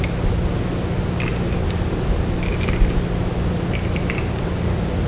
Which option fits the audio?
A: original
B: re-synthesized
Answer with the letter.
A